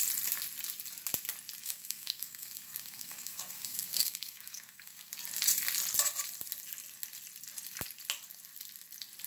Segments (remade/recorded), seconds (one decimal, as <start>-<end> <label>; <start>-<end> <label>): 0.0-1.6 recorded; 1.6-5.1 remade; 5.1-9.3 recorded